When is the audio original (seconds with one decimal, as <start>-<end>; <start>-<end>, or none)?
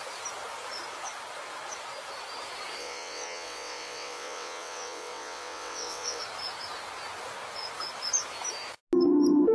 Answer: 0.0-2.8; 6.2-9.5